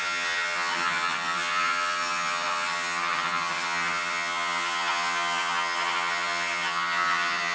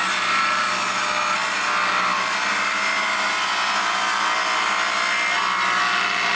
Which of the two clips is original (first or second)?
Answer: second